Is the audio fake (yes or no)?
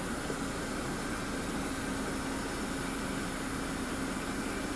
no